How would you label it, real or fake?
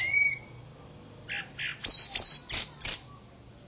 real